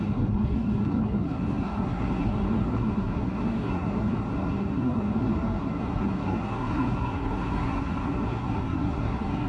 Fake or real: fake